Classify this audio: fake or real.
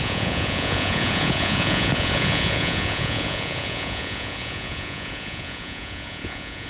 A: fake